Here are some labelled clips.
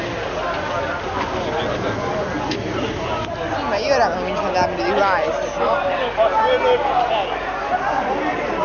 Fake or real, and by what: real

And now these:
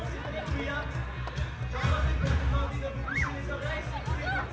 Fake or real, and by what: real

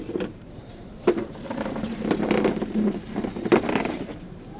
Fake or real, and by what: fake, vocoder, BigVGAN v2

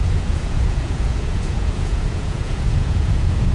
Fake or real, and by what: fake, vocoder, Vocos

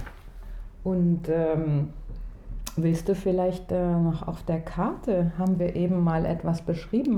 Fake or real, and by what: real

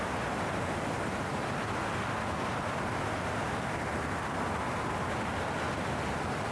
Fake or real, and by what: real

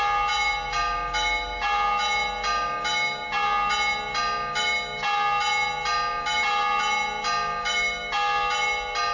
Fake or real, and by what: real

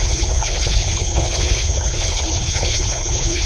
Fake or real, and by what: fake, codec, HILCodec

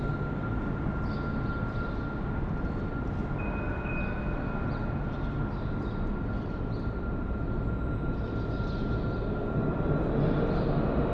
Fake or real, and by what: real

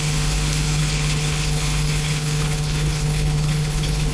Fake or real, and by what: fake, codec, HILCodec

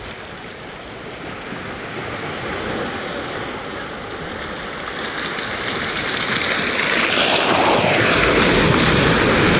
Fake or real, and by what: real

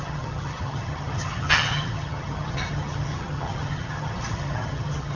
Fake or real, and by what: fake, vocoder, HiFi-GAN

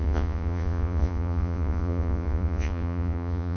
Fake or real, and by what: fake, vocoder, Vocos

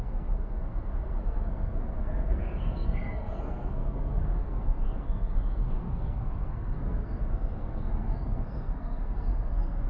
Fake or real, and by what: fake, codec, SNAC